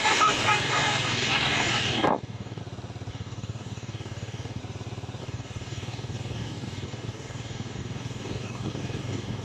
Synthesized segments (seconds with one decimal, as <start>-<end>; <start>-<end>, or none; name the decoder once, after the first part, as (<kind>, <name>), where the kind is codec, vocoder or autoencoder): 0.0-2.6 (codec, DAC); 3.1-4.6; 5.2-9.4